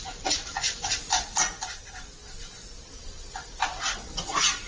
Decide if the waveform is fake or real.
real